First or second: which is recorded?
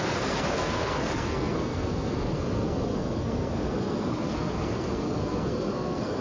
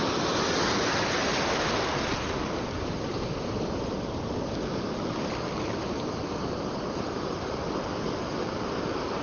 second